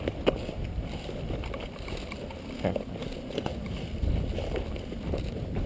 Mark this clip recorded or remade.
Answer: remade